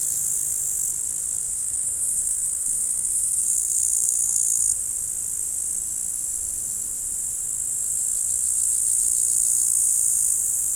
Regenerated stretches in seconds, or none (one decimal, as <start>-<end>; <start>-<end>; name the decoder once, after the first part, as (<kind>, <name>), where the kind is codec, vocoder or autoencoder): 1.4-4.6 (codec, SNAC)